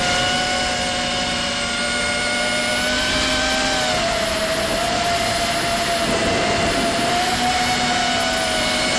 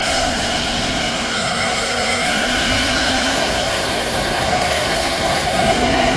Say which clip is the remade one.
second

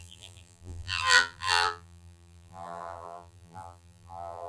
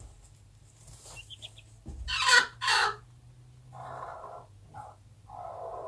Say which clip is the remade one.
first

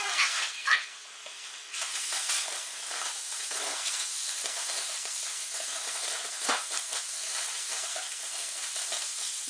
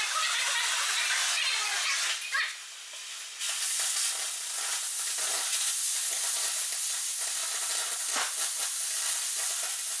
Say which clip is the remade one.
first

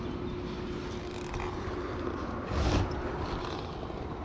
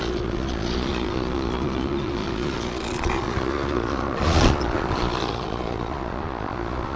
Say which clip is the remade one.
second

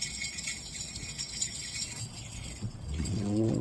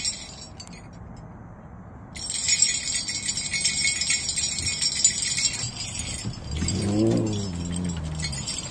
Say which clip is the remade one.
first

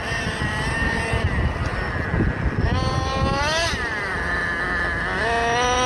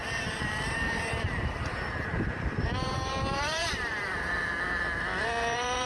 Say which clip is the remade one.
second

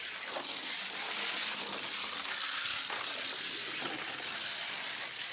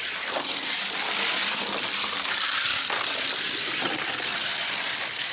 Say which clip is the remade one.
second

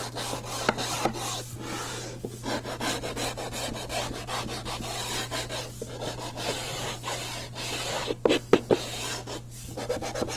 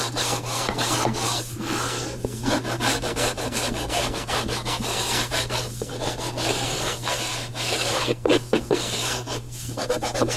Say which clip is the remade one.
second